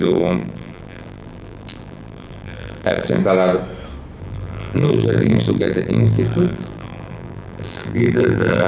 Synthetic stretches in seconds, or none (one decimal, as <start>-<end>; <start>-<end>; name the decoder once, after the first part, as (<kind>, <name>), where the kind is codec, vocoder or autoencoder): 0.0-3.2 (vocoder, BigVGAN v2); 4.2-8.7